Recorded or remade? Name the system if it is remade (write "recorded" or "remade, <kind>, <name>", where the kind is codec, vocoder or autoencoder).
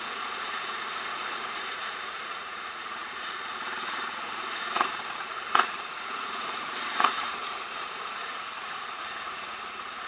remade, vocoder, Vocos